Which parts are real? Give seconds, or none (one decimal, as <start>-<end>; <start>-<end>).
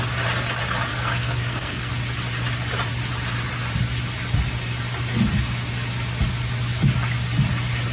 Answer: 0.0-0.9; 1.9-7.9